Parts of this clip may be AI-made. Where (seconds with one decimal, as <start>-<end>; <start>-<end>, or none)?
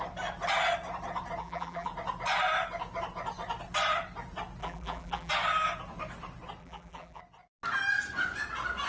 1.4-1.9; 4.6-5.3; 6.6-7.2